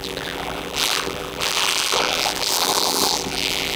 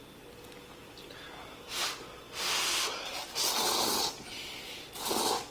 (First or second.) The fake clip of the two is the first